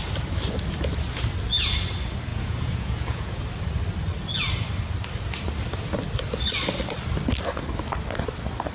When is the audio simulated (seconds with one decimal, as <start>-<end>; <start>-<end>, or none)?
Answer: 2.3-3.4